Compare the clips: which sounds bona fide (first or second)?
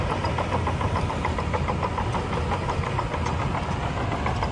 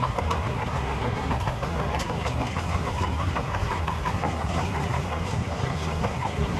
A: first